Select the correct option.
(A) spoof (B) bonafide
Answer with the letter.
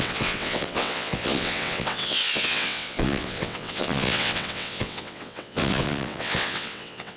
A